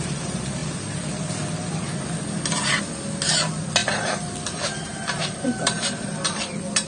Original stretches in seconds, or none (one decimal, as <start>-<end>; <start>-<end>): 0.0-3.8